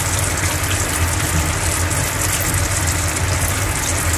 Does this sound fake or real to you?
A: real